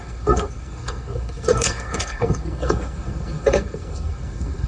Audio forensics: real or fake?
fake